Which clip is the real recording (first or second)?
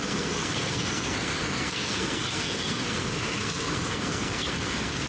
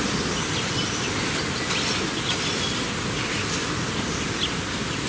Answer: second